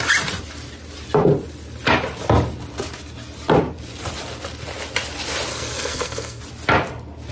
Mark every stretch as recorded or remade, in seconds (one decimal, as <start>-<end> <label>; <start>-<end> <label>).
0.0-5.5 recorded; 5.5-6.4 remade; 6.4-7.3 recorded